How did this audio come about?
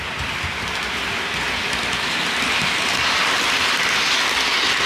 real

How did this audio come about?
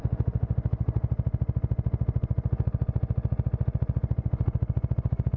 real